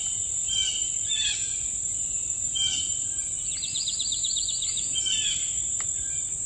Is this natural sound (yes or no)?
yes